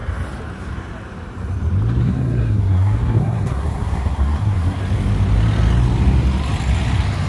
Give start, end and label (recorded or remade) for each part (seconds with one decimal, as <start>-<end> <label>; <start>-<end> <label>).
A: 0.0-2.0 recorded; 2.0-4.8 remade; 4.8-7.3 recorded